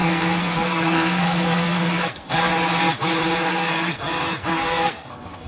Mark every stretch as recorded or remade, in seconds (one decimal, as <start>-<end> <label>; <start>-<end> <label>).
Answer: 0.0-2.5 remade; 2.5-3.5 recorded; 3.5-5.5 remade